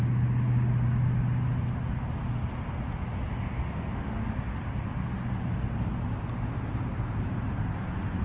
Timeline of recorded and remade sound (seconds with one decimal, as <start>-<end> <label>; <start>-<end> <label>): 0.0-3.6 recorded; 3.6-4.2 remade; 4.2-8.2 recorded